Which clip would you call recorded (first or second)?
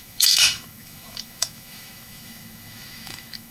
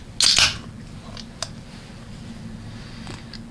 second